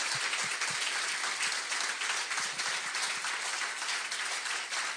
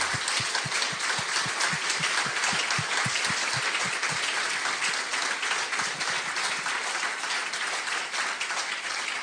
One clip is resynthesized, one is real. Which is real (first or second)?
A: second